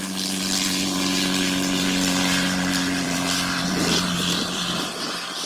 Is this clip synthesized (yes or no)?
yes